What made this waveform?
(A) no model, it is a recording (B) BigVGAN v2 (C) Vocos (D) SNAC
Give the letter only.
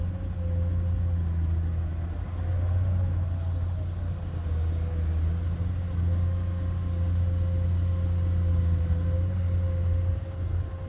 A